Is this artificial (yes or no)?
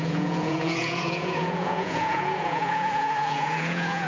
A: yes